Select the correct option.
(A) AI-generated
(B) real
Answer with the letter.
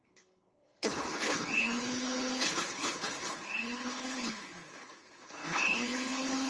A